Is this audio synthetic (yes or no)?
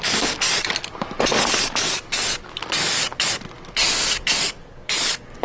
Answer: no